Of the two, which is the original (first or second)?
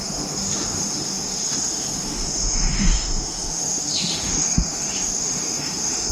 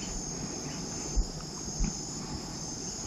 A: second